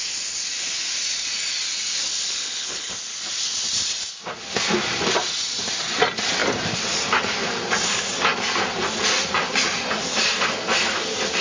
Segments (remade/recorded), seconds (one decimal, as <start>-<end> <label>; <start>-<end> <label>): 0.0-2.1 recorded; 2.1-2.9 remade; 2.9-11.4 recorded